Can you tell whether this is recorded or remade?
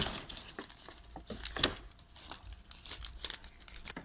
recorded